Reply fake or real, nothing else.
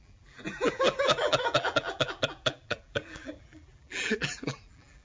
fake